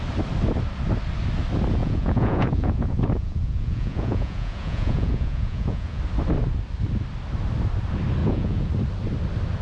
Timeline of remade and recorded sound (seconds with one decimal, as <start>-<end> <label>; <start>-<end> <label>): 0.0-1.8 recorded; 1.8-6.0 remade; 6.0-8.2 recorded; 8.2-8.7 remade; 8.7-9.6 recorded

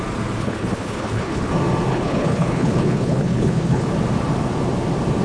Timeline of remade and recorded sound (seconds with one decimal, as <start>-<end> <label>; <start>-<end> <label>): 0.0-0.4 recorded; 0.4-1.5 remade; 1.5-1.9 recorded; 1.9-3.9 remade; 3.9-5.2 recorded

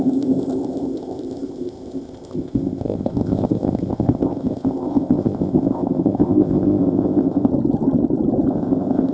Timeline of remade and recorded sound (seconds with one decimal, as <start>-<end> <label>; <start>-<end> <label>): 0.0-7.5 remade; 7.5-8.5 recorded; 8.5-9.1 remade

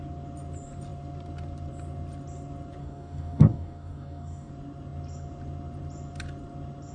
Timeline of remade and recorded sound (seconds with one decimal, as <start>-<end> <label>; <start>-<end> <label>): 0.0-2.8 recorded; 2.8-4.5 remade; 4.5-6.9 recorded